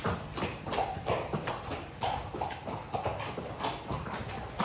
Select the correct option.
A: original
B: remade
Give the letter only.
A